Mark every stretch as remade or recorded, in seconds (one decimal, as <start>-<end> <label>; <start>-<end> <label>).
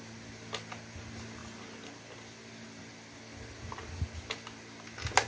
0.0-5.3 recorded